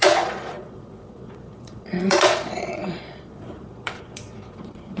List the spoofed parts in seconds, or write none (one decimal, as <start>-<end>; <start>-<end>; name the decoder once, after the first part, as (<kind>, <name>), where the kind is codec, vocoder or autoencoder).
0.0-5.0 (vocoder, Vocos)

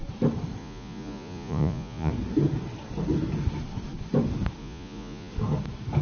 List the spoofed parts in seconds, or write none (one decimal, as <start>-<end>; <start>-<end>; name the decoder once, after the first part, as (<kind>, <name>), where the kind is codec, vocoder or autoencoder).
0.6-2.1 (vocoder, Vocos); 4.6-5.3

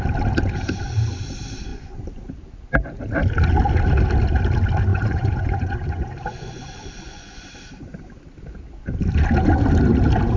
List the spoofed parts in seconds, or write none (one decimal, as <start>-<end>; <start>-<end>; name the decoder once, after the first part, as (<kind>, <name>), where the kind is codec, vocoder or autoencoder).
1.7-2.2 (vocoder, Vocos); 4.9-7.4